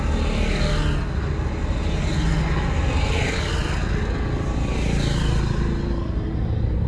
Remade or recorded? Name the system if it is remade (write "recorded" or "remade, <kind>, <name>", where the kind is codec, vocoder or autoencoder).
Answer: recorded